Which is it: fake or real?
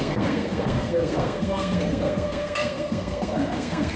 fake